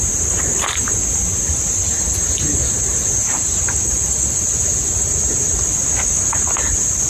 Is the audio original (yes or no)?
yes